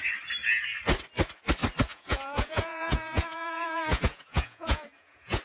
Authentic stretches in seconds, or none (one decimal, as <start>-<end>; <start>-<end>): 0.0-1.9